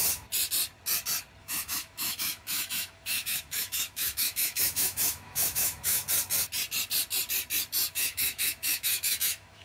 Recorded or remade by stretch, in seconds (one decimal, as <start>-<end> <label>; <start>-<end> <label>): 0.0-1.4 recorded; 1.4-6.0 remade; 6.0-7.9 recorded; 7.9-9.6 remade